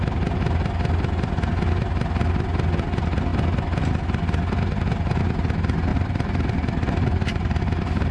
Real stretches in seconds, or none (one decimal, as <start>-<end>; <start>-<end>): 0.0-5.9; 7.6-8.1